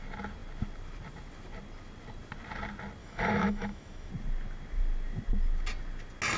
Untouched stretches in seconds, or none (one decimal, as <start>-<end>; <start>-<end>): 0.0-3.0; 4.1-6.4